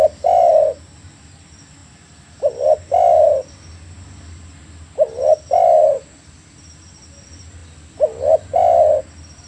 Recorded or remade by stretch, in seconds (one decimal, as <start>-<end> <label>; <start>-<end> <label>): 0.0-9.5 recorded